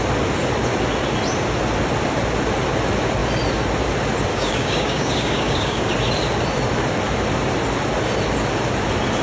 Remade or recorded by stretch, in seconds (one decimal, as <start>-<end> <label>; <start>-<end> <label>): 0.0-4.3 recorded; 4.3-5.8 remade; 5.8-9.2 recorded